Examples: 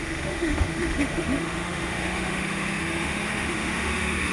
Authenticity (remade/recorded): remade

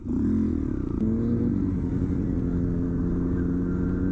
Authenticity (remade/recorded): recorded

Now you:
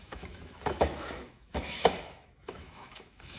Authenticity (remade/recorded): remade